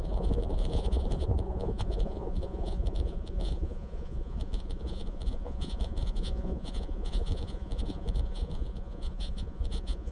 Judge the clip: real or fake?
fake